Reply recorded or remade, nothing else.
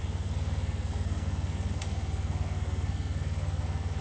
remade